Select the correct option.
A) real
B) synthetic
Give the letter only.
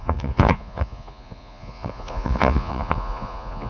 B